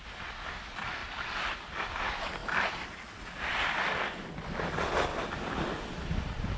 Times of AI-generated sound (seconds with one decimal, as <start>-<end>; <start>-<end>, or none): none